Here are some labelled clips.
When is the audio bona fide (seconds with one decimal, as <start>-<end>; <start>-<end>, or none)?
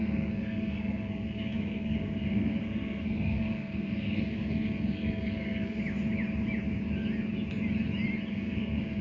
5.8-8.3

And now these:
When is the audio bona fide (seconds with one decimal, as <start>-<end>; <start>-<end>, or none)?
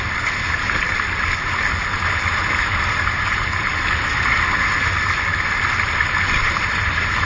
0.0-7.2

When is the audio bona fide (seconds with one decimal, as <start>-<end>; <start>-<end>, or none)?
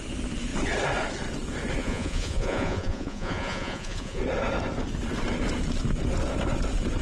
0.0-1.8; 4.2-7.0